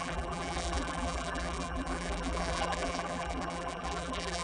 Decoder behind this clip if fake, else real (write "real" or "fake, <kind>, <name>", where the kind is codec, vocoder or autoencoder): fake, vocoder, BigVGAN v2